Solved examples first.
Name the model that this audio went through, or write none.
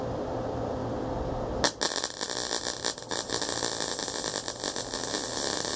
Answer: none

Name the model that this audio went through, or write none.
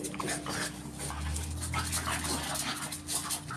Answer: none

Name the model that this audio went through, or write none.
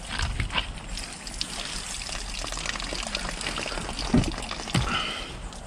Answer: none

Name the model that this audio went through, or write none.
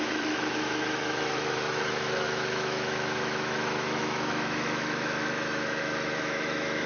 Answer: autoencoder, DAC-VAE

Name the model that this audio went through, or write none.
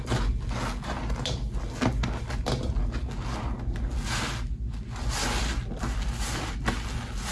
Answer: none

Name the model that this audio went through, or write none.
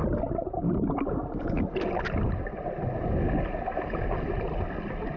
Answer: none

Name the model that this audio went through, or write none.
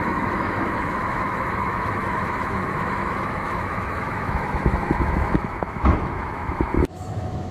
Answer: autoencoder, DAC-VAE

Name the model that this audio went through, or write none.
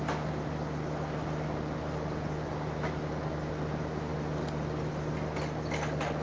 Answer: none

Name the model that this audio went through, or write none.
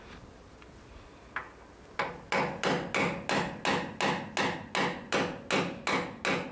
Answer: none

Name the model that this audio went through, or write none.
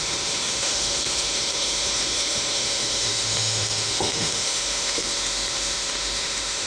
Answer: autoencoder, DAC-VAE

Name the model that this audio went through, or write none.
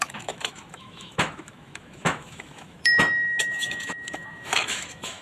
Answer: autoencoder, DAC-VAE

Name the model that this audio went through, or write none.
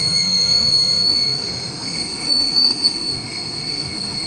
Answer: autoencoder, DAC-VAE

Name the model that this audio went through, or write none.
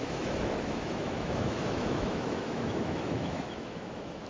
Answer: autoencoder, DAC-VAE